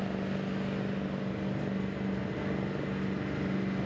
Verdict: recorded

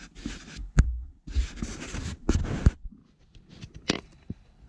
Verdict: recorded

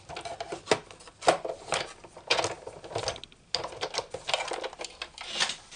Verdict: recorded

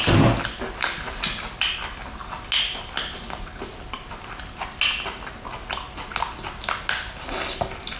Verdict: recorded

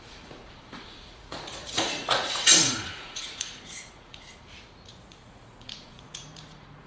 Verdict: remade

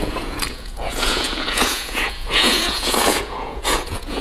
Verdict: remade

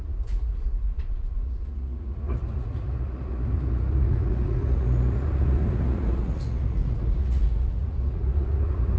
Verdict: remade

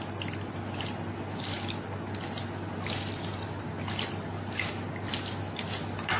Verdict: recorded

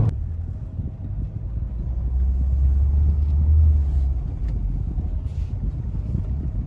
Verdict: recorded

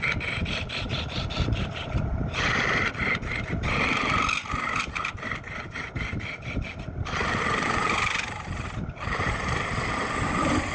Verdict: recorded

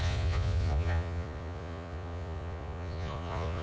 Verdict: remade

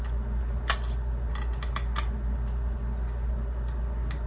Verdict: recorded